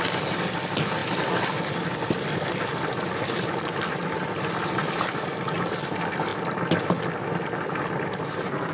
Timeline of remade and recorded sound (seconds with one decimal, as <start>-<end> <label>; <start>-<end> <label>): 0.0-8.7 recorded